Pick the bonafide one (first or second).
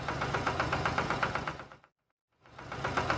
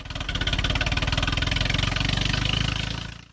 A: second